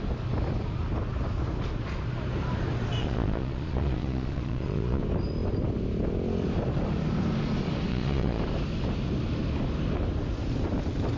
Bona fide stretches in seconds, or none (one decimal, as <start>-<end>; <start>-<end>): 0.0-3.0; 5.0-7.9; 8.4-11.2